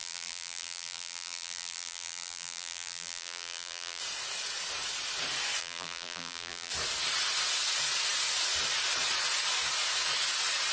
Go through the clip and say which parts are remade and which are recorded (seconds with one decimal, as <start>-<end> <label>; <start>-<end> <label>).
0.0-4.0 remade; 4.0-5.6 recorded; 5.6-6.7 remade; 6.7-10.7 recorded